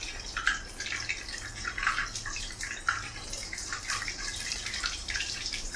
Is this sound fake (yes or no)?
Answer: yes